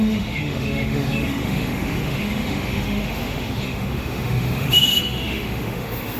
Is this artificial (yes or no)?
yes